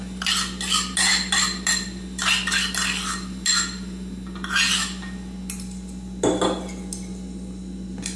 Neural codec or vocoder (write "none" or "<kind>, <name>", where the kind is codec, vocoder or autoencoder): none